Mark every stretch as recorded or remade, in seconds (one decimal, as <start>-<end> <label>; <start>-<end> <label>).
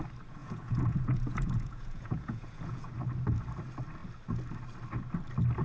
0.0-0.4 recorded; 0.4-2.9 remade; 2.9-5.6 recorded